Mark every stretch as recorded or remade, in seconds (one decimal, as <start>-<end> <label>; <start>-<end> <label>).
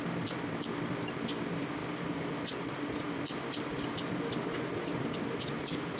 0.0-6.0 recorded